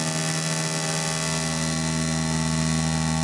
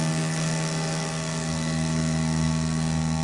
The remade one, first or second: second